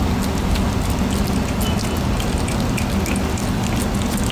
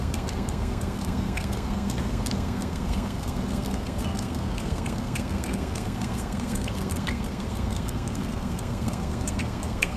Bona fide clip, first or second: first